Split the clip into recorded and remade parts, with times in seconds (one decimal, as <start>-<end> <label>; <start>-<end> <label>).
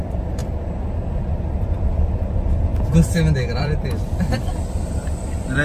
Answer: 0.0-0.4 remade; 0.4-2.1 recorded; 2.1-2.7 remade; 2.7-3.6 recorded; 3.6-5.6 remade